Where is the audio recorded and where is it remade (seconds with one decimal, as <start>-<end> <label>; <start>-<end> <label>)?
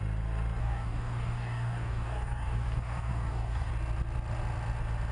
0.0-0.6 recorded; 0.6-3.7 remade; 3.7-5.1 recorded